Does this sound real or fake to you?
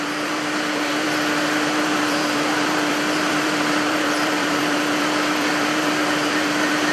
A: fake